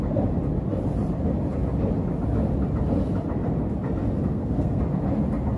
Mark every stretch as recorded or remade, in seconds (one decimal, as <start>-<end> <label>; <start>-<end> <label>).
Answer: 0.0-4.3 recorded; 4.3-4.8 remade; 4.8-5.6 recorded